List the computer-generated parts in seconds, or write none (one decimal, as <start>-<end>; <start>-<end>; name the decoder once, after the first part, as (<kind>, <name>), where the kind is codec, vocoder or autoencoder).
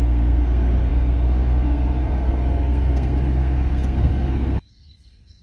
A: 0.0-5.4 (codec, SNAC)